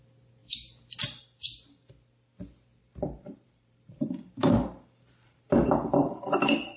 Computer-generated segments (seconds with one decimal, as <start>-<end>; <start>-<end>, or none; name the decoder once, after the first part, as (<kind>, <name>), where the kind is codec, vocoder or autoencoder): 2.8-6.8 (vocoder, BigVGAN v2)